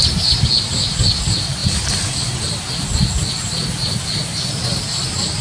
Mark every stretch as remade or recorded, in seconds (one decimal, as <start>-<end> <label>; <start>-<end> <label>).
0.0-5.4 recorded